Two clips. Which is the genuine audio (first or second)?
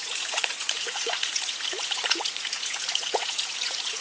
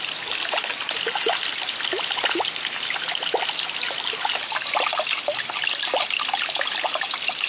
second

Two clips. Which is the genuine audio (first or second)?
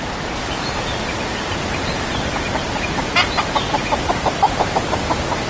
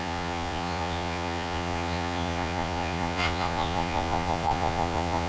first